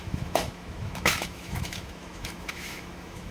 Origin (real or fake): fake